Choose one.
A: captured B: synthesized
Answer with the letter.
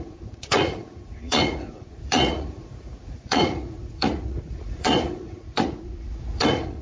B